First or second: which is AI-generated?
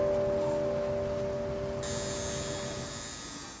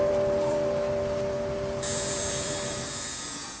second